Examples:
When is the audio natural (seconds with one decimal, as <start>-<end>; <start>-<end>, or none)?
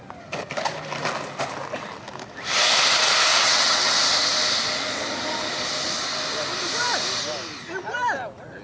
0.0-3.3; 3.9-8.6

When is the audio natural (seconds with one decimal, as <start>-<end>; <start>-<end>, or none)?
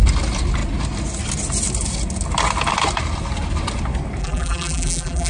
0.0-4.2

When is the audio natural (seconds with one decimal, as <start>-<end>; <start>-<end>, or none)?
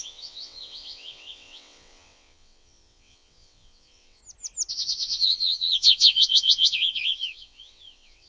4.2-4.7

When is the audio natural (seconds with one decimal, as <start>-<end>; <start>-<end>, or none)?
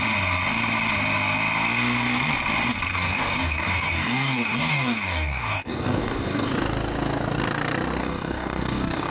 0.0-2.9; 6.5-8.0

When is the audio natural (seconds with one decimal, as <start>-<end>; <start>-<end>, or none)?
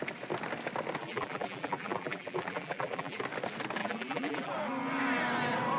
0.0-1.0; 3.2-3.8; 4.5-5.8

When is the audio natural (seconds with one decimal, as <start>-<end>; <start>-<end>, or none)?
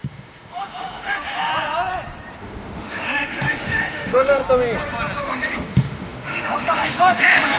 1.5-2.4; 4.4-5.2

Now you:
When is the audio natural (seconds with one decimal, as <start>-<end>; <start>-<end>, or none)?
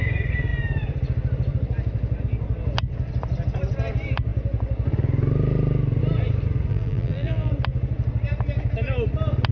0.0-6.7; 7.5-9.5